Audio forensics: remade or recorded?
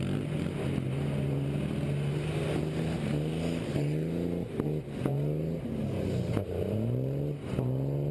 recorded